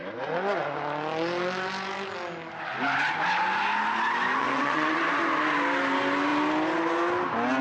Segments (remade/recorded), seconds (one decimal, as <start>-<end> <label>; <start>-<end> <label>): 0.0-4.4 recorded; 4.4-5.0 remade; 5.0-7.6 recorded